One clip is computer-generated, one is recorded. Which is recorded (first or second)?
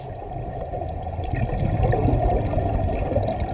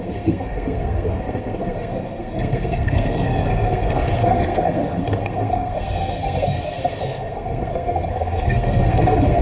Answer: first